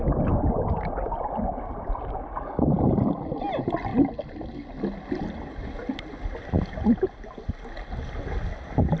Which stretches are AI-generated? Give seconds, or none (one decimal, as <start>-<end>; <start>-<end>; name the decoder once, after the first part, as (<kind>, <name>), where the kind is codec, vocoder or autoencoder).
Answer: none